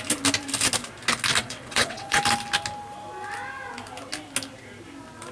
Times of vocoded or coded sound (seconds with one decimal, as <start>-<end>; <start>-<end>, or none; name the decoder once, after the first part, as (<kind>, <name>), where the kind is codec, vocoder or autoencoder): 1.4-2.2 (vocoder, WaveNeXt)